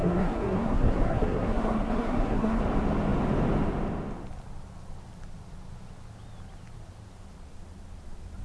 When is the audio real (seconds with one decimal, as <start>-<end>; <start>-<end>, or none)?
2.6-8.4

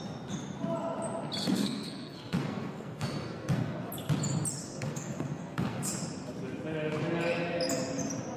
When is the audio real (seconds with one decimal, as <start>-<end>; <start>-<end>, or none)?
0.0-1.4; 3.9-4.6; 5.9-8.4